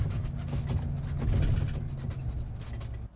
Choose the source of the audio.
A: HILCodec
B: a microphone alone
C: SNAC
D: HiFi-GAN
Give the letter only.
B